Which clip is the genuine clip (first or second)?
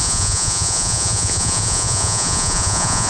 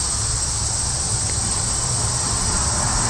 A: second